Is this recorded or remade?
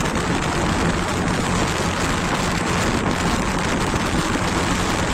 recorded